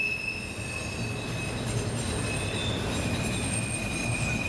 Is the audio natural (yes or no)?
yes